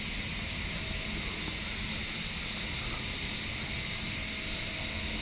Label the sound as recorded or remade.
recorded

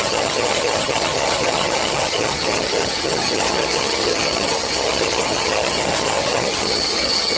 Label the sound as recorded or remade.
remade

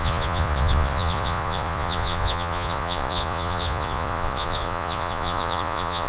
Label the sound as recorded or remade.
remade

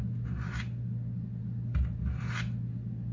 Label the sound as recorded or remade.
recorded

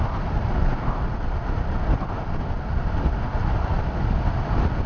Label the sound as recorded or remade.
recorded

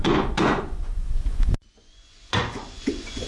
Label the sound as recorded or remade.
remade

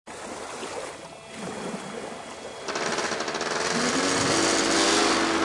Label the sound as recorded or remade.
recorded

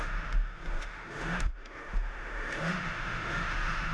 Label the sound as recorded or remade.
remade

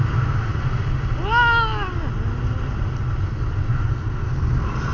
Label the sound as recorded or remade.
recorded